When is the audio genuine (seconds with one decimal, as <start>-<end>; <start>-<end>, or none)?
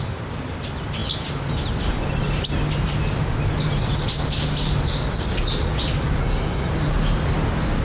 0.0-6.2; 6.7-7.8